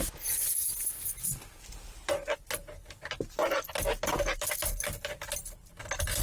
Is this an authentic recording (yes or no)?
yes